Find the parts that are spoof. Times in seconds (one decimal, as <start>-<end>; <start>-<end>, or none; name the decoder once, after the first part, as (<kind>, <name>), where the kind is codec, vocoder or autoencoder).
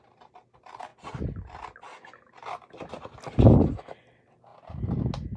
none